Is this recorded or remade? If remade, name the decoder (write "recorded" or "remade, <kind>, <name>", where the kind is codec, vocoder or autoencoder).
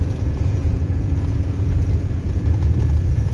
remade, vocoder, Vocos